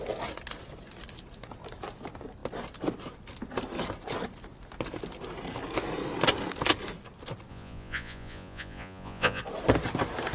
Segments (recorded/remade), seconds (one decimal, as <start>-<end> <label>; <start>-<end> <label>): 0.0-7.5 recorded; 7.5-9.4 remade; 9.4-10.3 recorded